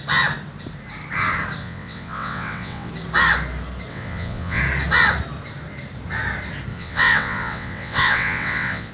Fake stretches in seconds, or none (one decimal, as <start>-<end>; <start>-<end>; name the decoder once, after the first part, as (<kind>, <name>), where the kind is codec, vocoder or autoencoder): 1.6-2.9 (vocoder, WaveNeXt); 3.9-4.6; 6.7-8.9